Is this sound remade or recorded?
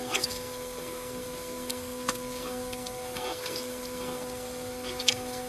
remade